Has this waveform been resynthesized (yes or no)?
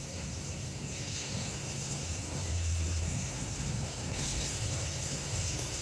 yes